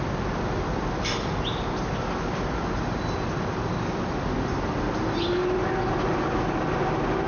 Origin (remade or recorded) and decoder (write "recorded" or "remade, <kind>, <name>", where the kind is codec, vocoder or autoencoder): recorded